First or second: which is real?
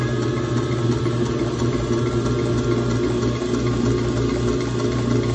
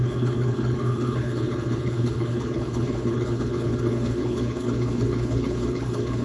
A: first